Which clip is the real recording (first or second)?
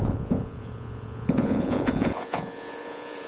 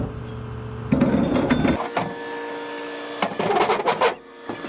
second